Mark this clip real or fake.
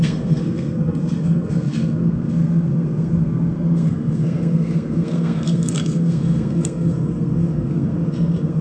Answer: fake